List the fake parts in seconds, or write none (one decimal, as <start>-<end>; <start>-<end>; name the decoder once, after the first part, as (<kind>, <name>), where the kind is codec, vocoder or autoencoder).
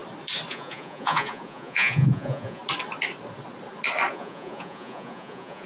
0.5-2.6 (vocoder, Vocos); 4.1-5.7